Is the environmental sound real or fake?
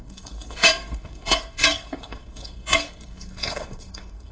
fake